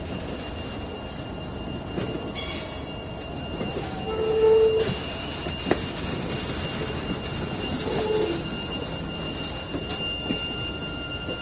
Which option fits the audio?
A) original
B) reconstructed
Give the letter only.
A